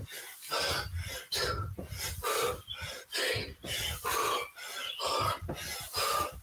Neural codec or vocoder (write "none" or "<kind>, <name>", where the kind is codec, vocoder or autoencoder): none